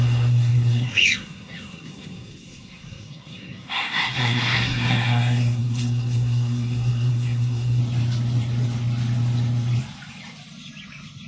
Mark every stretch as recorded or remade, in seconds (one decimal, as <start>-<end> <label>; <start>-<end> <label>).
0.0-7.8 remade; 7.8-11.3 recorded